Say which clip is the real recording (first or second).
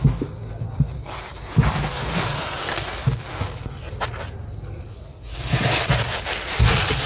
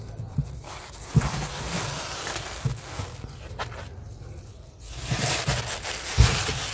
first